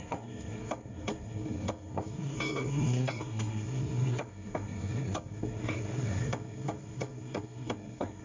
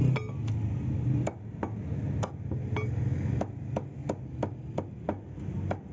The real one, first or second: second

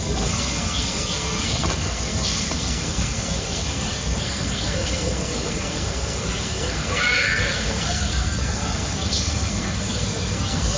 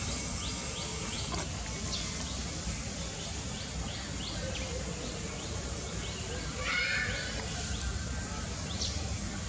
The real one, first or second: second